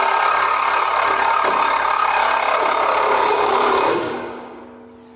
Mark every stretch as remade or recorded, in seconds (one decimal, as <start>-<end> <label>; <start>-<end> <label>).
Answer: 0.0-3.3 recorded; 3.3-4.6 remade; 4.6-5.2 recorded